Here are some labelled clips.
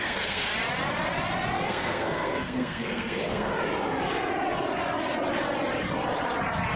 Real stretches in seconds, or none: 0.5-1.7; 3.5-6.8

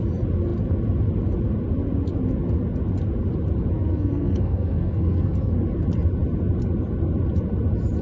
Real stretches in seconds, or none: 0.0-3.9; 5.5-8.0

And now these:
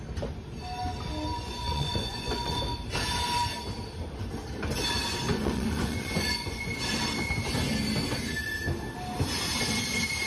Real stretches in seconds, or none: 0.0-1.3; 2.6-5.3; 6.7-10.3

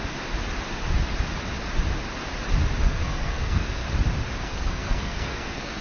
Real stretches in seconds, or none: 0.0-2.8; 3.8-4.4

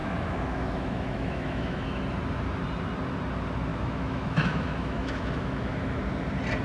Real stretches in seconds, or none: 2.0-3.7; 6.0-6.6

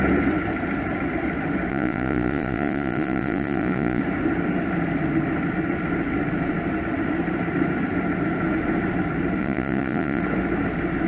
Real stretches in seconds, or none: 0.0-1.7; 4.0-9.4; 10.2-11.1

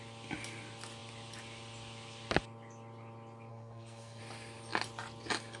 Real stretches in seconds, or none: 0.0-3.5; 4.2-5.6